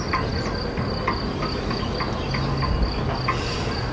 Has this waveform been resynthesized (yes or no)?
no